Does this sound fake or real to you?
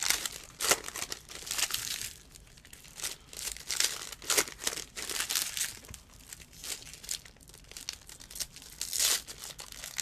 real